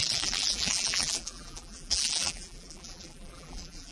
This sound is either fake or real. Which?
fake